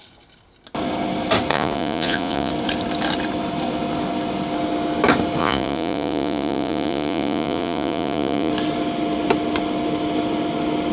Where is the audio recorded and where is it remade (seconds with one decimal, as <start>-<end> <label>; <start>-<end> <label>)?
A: 0.0-1.5 recorded; 1.5-2.5 remade; 2.5-5.4 recorded; 5.4-8.5 remade; 8.5-10.9 recorded